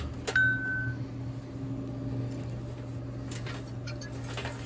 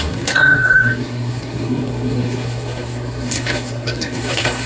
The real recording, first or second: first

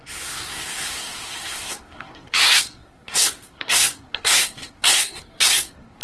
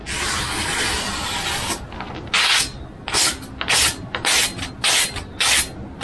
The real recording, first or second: second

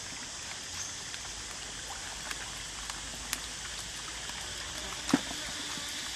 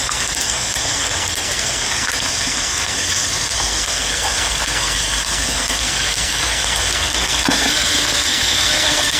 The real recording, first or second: first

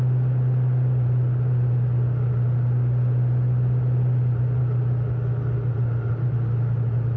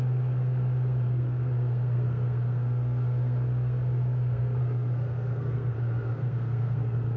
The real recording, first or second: first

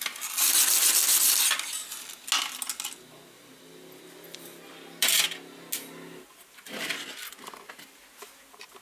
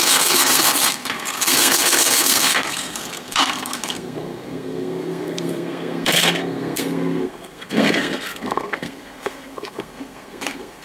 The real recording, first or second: first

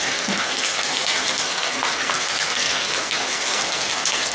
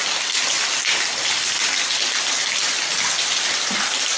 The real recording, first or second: second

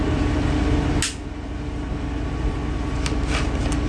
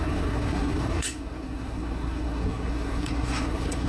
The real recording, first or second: first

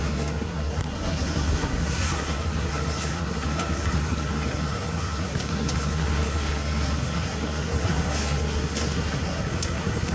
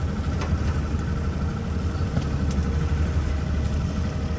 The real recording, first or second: second